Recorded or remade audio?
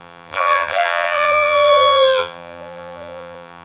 remade